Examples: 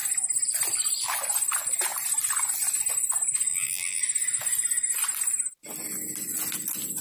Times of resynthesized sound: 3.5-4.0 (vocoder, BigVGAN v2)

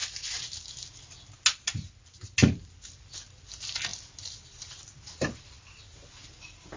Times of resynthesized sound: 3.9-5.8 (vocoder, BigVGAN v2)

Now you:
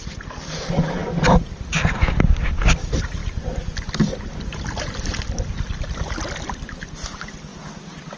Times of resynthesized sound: none

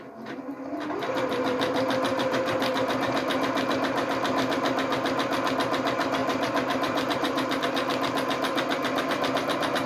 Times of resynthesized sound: 2.1-2.9 (vocoder, BigVGAN v2); 6.2-7.6

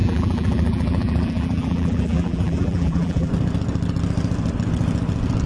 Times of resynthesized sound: 0.0-3.3 (vocoder, BigVGAN v2)

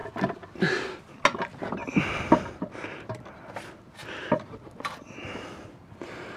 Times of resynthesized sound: 1.8-2.7 (vocoder, BigVGAN v2)

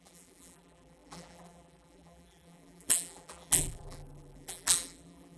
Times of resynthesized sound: 0.0-5.4 (vocoder, BigVGAN v2)

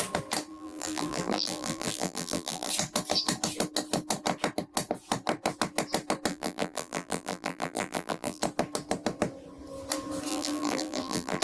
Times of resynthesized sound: 0.5-2.7 (vocoder, BigVGAN v2); 6.3-8.4; 10.3-11.4